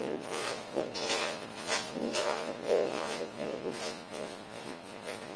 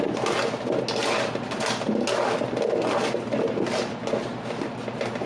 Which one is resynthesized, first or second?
first